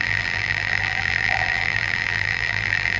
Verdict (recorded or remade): remade